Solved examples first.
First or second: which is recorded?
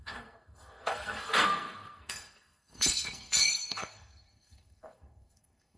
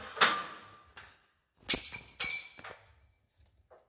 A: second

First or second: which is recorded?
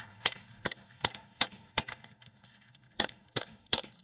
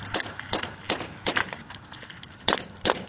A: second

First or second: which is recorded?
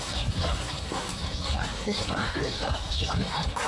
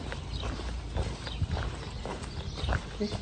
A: second